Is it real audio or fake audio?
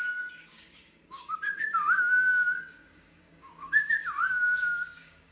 fake